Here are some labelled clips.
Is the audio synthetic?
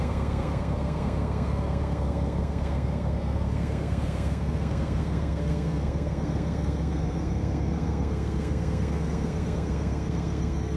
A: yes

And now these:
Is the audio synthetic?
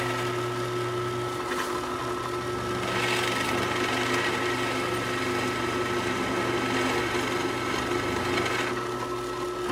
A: no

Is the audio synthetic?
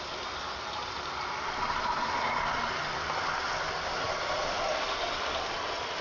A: no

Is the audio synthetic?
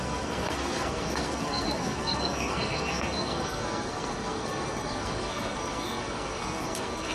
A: yes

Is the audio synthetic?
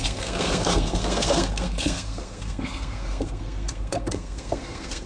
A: yes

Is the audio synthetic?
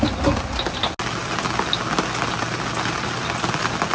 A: no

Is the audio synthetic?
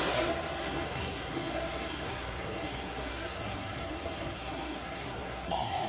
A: yes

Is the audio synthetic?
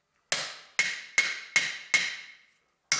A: no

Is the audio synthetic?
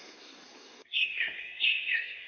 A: yes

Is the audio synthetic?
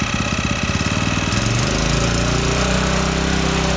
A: no